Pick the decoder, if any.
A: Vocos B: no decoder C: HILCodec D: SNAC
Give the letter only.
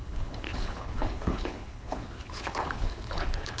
C